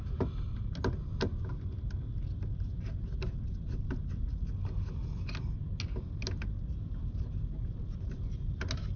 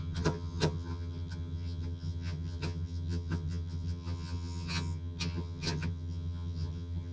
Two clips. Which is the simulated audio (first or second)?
second